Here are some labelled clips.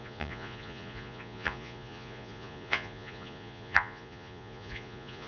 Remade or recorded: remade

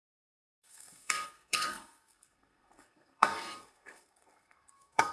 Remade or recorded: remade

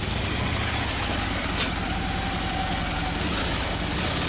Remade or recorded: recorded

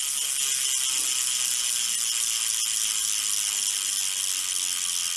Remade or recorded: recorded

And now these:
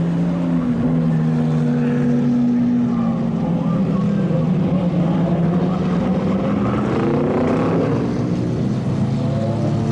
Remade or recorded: recorded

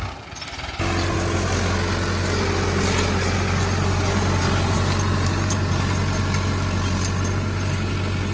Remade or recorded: recorded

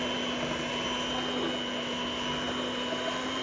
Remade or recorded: recorded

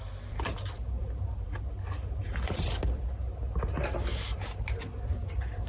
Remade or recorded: recorded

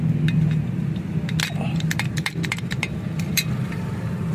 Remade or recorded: recorded